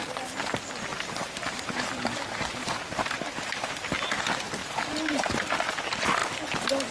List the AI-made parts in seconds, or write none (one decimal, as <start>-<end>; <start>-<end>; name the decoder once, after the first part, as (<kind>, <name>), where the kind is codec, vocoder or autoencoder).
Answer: 0.9-3.9 (vocoder, BigVGAN v2); 4.6-5.5